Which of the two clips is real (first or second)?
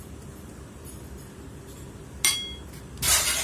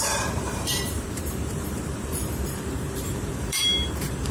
first